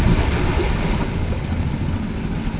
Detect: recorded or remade recorded